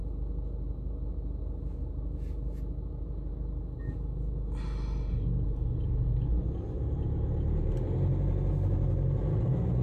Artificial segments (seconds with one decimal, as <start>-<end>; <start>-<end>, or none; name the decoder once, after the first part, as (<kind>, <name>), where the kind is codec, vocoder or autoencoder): none